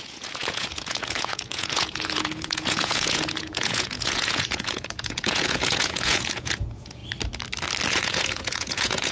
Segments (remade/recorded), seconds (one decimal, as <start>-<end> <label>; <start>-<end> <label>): 0.0-7.0 remade; 7.0-7.9 recorded; 7.9-9.1 remade